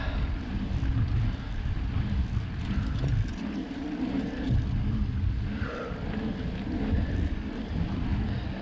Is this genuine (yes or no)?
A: yes